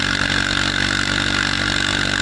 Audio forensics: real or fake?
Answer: real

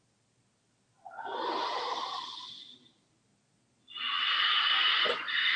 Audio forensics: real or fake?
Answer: real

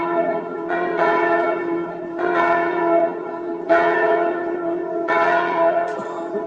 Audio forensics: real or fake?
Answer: fake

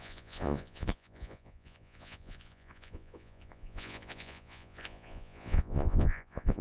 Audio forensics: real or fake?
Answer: fake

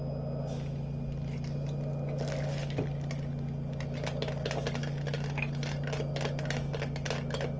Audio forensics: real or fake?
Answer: real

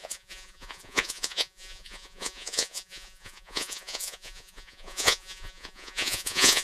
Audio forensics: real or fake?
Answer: fake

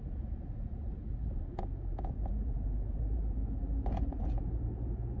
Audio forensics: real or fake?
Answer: fake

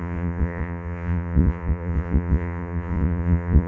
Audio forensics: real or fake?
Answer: fake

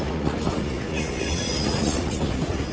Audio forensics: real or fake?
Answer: fake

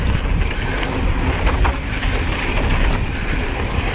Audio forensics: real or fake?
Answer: real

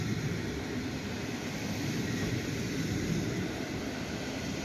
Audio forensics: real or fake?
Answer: real